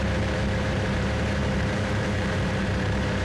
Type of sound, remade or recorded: remade